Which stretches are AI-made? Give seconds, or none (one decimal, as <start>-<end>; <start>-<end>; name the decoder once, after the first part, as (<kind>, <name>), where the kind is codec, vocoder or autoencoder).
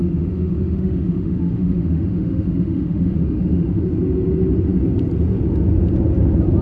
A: 0.0-3.8 (autoencoder, DAC-VAE)